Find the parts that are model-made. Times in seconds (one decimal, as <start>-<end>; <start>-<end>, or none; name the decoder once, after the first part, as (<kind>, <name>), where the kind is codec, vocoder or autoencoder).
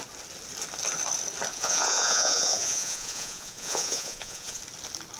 1.5-4.6 (vocoder, Vocos)